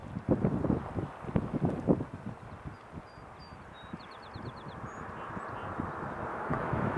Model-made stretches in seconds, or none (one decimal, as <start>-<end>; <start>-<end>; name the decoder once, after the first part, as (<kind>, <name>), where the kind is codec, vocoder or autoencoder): 6.3-7.0 (autoencoder, DAC-VAE)